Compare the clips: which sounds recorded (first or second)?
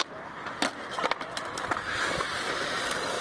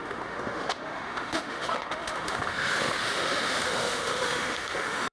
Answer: first